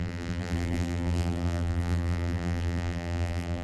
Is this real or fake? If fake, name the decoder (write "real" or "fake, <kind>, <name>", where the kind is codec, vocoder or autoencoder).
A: fake, vocoder, BigVGAN v2